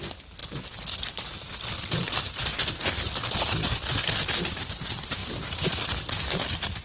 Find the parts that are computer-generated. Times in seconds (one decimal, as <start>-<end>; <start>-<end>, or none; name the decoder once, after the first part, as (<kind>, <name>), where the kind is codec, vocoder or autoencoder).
none